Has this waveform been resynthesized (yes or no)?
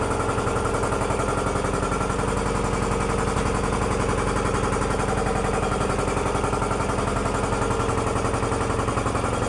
no